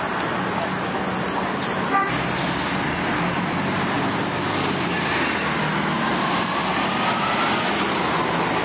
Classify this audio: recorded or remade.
recorded